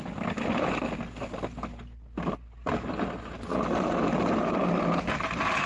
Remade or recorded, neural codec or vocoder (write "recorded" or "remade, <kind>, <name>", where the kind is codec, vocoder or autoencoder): recorded